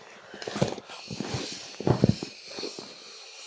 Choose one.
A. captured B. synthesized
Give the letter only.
A